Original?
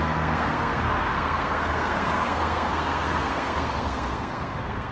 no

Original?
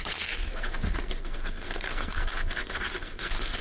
no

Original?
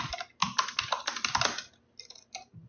yes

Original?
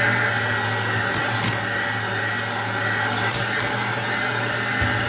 yes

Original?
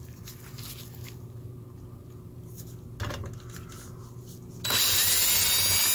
yes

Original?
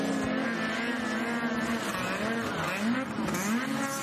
yes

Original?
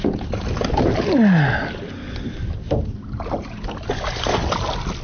yes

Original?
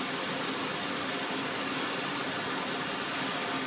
yes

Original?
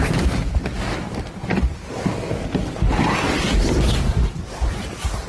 yes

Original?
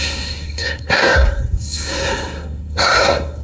no